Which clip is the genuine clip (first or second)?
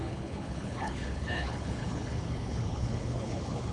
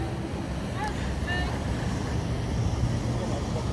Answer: second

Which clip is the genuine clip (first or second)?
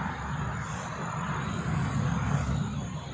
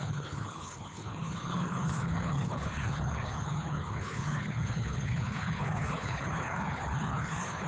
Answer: first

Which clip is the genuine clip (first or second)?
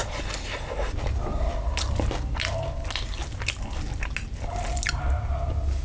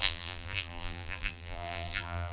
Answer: first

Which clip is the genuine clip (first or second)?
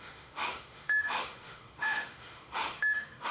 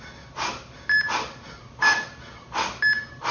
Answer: second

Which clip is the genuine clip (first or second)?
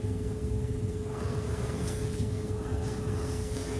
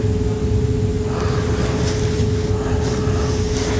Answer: second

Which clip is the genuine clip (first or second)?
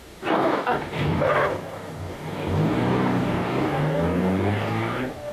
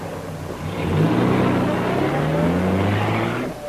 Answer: second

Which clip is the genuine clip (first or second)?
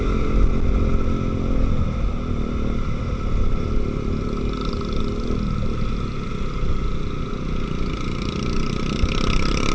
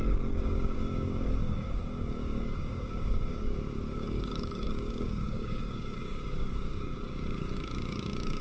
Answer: first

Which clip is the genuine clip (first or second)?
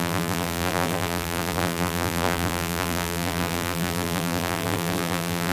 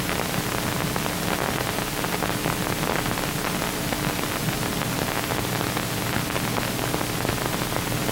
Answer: second